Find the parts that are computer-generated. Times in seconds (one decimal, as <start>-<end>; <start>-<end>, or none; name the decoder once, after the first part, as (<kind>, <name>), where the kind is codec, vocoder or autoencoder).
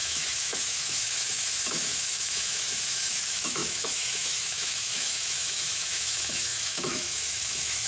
0.0-7.9 (autoencoder, DAC-VAE)